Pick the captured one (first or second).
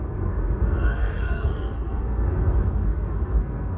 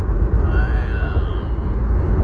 second